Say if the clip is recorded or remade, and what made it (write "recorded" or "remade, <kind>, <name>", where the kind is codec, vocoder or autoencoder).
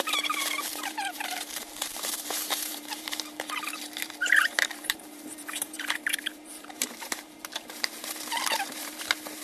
remade, vocoder, BigVGAN v2